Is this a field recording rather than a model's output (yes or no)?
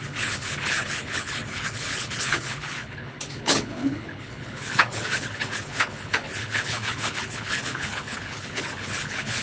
no